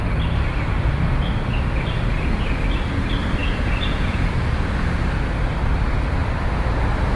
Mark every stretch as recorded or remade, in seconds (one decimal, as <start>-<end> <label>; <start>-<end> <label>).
0.0-3.4 recorded; 3.4-4.3 remade; 4.3-7.2 recorded

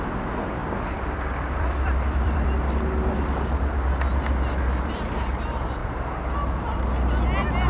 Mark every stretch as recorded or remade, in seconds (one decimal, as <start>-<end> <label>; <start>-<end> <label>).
0.0-0.6 recorded; 0.6-2.7 remade; 2.7-7.7 recorded

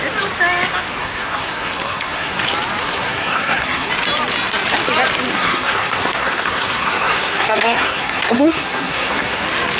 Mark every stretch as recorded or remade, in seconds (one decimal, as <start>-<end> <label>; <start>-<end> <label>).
0.0-1.0 recorded; 1.0-2.4 remade; 2.4-2.8 recorded; 2.8-3.9 remade; 3.9-5.3 recorded; 5.3-9.4 remade; 9.4-9.8 recorded

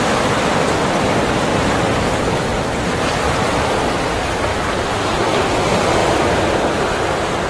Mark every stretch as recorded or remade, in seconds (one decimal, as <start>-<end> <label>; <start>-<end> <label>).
0.0-1.5 recorded; 1.5-2.0 remade; 2.0-2.5 recorded; 2.5-3.3 remade; 3.3-4.5 recorded; 4.5-5.1 remade; 5.1-7.5 recorded

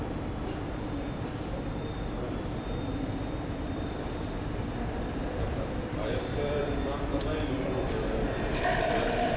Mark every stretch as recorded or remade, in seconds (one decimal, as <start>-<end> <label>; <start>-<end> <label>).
0.0-9.4 remade

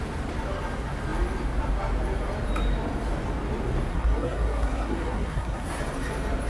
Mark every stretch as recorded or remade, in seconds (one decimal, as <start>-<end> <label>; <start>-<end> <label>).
0.0-3.9 recorded; 3.9-5.8 remade; 5.8-6.5 recorded

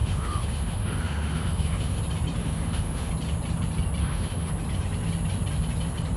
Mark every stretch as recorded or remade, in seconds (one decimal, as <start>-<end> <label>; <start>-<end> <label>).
0.0-2.0 remade; 2.0-2.4 recorded; 2.4-3.1 remade; 3.1-4.0 recorded; 4.0-4.5 remade; 4.5-6.2 recorded

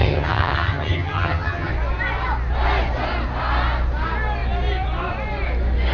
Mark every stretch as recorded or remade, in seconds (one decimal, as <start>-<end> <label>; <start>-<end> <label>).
0.0-1.7 remade; 1.7-5.9 recorded